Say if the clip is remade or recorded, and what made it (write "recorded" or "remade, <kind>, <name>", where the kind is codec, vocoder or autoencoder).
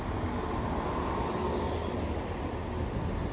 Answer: recorded